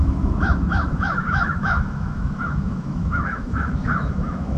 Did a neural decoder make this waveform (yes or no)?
yes